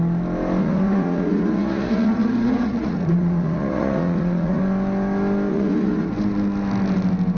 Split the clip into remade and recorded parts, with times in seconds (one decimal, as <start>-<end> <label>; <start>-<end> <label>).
0.0-0.6 recorded; 0.6-4.6 remade; 4.6-5.5 recorded; 5.5-6.1 remade; 6.1-7.4 recorded

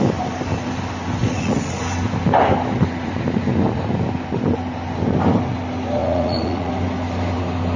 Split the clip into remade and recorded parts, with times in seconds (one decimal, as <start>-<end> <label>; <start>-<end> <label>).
0.0-1.2 recorded; 1.2-1.8 remade; 1.8-6.0 recorded; 6.0-6.7 remade; 6.7-7.8 recorded

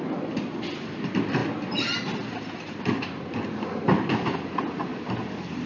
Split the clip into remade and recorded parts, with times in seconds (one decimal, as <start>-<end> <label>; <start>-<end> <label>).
0.0-5.7 recorded